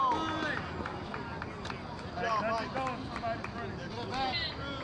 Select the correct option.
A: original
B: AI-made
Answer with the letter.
A